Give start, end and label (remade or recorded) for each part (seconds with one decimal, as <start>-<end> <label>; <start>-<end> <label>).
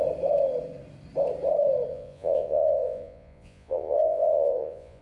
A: 0.0-1.9 recorded; 1.9-5.0 remade